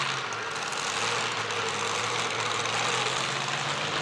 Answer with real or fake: real